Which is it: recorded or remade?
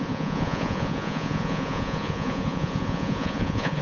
remade